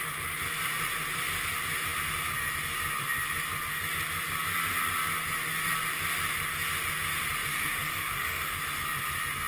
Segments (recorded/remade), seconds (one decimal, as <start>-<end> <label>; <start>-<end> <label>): 0.0-7.5 recorded; 7.5-8.6 remade; 8.6-9.5 recorded

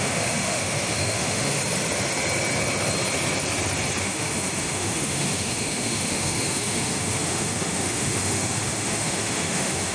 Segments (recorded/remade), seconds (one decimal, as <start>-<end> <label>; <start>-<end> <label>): 0.0-1.6 remade; 1.6-4.0 recorded; 4.0-9.9 remade

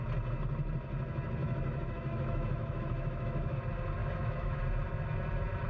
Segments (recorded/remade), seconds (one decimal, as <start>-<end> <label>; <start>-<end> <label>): 0.0-1.4 recorded; 1.4-3.6 remade; 3.6-4.0 recorded; 4.0-4.6 remade; 4.6-5.7 recorded

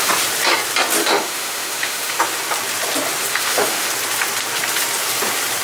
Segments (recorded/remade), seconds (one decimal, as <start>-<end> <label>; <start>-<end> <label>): 0.0-1.0 recorded; 1.0-2.2 remade; 2.2-3.3 recorded; 3.3-3.9 remade; 3.9-5.6 recorded

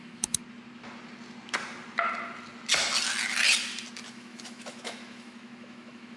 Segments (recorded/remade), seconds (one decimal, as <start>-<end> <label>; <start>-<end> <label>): 0.0-0.4 remade; 0.4-4.1 recorded; 4.1-6.2 remade

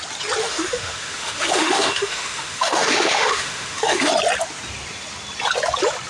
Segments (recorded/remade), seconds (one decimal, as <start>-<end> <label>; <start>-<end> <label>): 0.0-0.4 recorded; 0.4-4.1 remade; 4.1-6.1 recorded

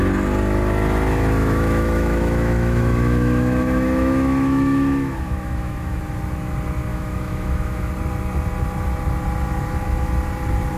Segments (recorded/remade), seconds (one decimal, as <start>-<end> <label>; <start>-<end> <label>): 0.0-1.4 recorded; 1.4-6.0 remade; 6.0-6.9 recorded; 6.9-7.9 remade; 7.9-10.8 recorded

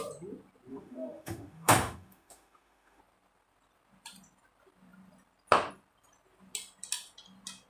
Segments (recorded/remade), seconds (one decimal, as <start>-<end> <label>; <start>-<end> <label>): 0.0-0.7 recorded; 0.7-3.0 remade; 3.0-7.7 recorded